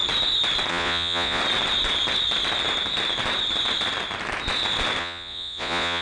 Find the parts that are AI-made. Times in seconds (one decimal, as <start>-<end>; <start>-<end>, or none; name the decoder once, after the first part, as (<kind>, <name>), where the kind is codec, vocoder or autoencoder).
0.7-1.4 (vocoder, Vocos); 5.0-6.0